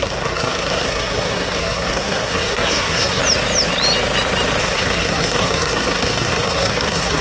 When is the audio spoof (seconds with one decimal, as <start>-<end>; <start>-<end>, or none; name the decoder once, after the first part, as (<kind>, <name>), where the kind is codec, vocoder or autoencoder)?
0.0-3.2 (codec, SNAC); 4.6-7.2